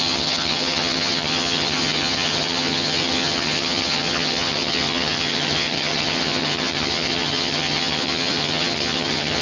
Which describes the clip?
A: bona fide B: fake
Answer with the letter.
B